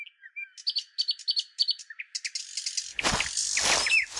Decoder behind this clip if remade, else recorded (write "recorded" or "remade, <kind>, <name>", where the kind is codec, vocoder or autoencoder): recorded